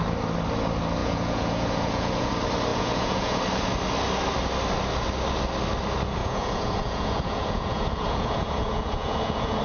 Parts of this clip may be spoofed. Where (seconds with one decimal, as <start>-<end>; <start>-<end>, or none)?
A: 1.0-2.3; 2.7-3.4; 6.2-9.6

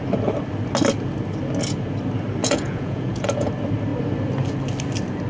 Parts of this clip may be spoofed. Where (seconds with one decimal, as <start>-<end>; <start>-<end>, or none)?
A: 2.4-3.5

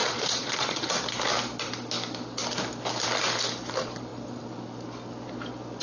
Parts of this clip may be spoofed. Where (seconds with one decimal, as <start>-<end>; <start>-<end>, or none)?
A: 0.0-1.0

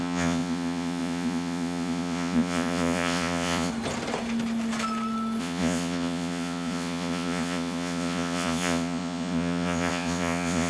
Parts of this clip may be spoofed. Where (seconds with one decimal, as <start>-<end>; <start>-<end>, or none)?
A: 0.0-3.7; 5.4-10.7